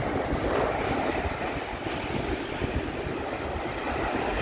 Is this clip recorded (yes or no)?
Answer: yes